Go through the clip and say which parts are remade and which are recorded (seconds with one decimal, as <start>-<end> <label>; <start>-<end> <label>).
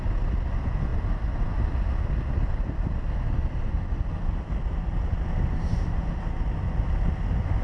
0.0-5.7 recorded; 5.7-6.2 remade; 6.2-7.6 recorded